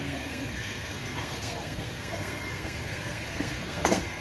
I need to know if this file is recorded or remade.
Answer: remade